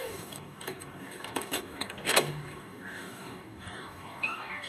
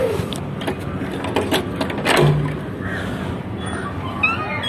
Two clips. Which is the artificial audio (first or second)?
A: first